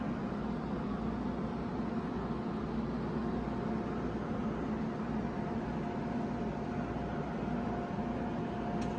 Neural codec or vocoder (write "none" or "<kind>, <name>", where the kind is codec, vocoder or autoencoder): none